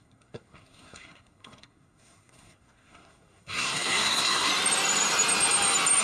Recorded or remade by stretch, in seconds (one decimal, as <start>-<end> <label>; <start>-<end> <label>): 0.0-4.5 remade; 4.5-6.0 recorded